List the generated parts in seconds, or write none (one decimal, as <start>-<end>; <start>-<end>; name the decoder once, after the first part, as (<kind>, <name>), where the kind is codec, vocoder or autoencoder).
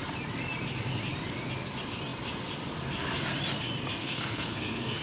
4.0-5.0 (codec, SNAC)